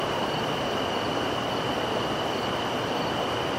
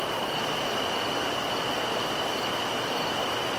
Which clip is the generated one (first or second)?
first